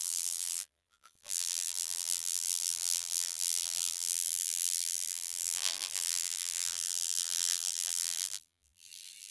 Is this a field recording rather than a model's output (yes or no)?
no